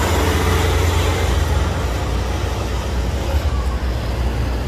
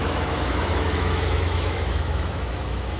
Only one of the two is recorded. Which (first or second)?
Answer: first